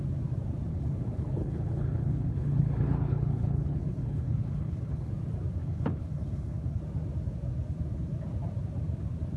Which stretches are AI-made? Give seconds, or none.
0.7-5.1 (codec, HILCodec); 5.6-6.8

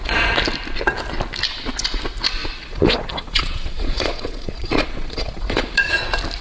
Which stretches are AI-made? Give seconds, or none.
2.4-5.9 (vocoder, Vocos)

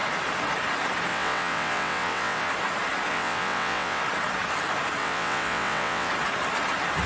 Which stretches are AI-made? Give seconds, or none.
1.1-2.5 (vocoder, WaveNeXt); 3.1-4.0; 5.0-6.1

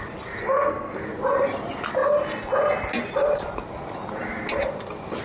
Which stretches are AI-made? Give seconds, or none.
0.4-1.0 (codec, SNAC)

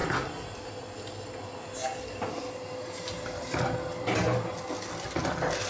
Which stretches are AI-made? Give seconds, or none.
none